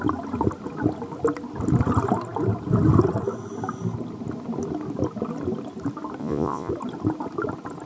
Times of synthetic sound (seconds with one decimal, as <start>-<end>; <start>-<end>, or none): 6.2-6.7